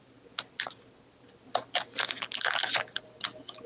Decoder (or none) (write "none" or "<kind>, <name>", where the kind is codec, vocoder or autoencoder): none